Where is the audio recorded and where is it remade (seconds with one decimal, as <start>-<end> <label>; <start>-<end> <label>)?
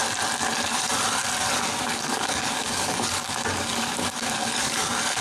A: 0.0-1.9 recorded; 1.9-5.2 remade